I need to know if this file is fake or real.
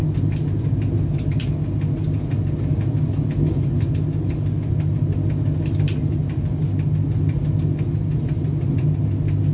real